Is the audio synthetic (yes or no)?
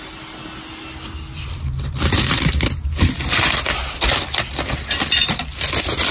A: no